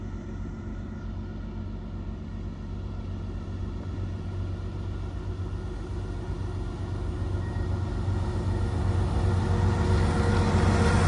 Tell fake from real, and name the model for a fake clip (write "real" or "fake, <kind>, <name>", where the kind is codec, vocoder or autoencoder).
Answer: real